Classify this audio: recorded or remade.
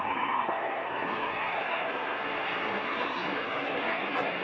remade